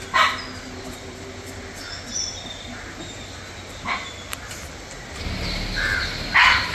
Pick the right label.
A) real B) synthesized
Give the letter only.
A